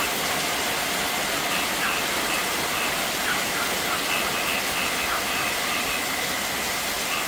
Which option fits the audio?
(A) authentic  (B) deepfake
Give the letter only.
A